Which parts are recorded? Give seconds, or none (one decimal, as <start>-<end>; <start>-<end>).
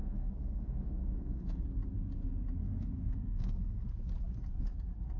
1.6-2.6; 3.8-5.2